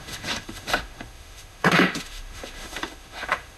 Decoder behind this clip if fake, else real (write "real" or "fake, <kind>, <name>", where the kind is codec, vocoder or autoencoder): fake, autoencoder, DAC-VAE